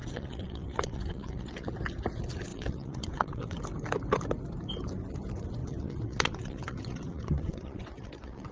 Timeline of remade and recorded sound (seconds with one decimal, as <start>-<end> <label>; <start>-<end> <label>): 0.0-1.7 remade; 1.7-2.5 recorded; 2.5-3.6 remade; 3.6-5.6 recorded; 5.6-8.5 remade

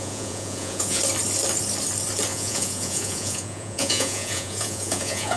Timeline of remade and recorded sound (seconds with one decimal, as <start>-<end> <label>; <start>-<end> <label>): 0.0-1.0 remade; 1.0-2.3 recorded; 2.3-5.4 remade

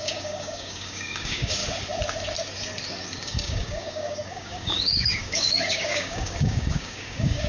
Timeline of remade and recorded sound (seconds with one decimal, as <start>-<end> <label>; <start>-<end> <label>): 0.0-1.6 remade; 1.6-3.2 recorded; 3.2-7.5 remade

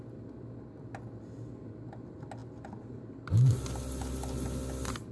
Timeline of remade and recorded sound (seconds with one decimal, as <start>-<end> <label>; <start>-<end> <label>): 0.0-5.1 recorded

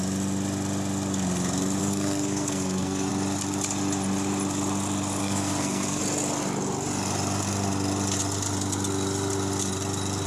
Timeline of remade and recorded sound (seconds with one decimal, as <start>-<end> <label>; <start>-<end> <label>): 0.0-1.8 recorded; 1.8-3.1 remade; 3.1-5.2 recorded; 5.2-6.0 remade; 6.0-10.3 recorded

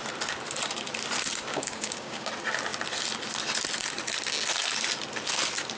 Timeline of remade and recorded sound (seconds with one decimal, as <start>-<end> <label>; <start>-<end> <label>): 0.0-1.5 recorded; 1.5-2.3 remade; 2.3-5.8 recorded